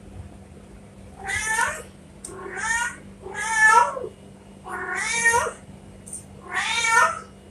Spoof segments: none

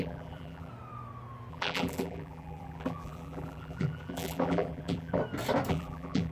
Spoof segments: 0.0-0.7 (vocoder, BigVGAN v2); 1.5-5.2; 5.7-6.3

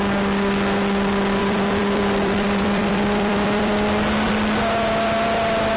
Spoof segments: 1.4-4.3 (vocoder, BigVGAN v2)

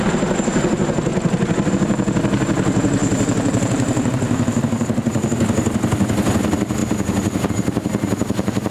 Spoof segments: 3.0-4.6 (vocoder, BigVGAN v2)